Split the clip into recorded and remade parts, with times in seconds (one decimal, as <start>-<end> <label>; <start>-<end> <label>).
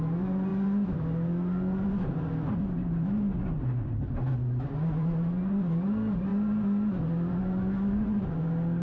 0.0-8.8 recorded